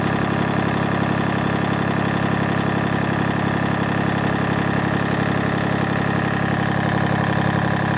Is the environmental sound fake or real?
real